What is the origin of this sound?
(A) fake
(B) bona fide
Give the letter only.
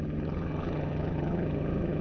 A